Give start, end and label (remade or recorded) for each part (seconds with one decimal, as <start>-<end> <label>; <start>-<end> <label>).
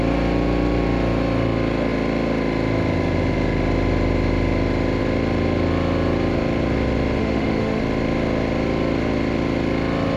0.0-7.2 recorded; 7.2-7.8 remade; 7.8-10.2 recorded